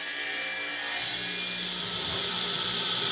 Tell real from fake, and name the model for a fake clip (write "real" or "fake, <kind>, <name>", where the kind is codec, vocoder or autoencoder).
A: real